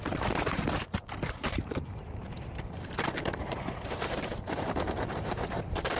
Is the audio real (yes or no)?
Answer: no